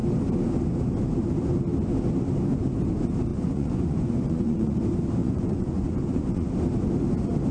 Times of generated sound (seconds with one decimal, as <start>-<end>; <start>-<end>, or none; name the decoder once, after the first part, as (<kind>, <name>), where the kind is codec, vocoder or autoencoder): 3.3-4.8 (vocoder, Vocos); 5.2-6.5